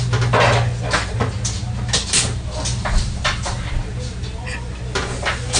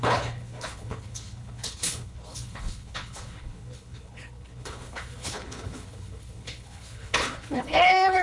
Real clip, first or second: first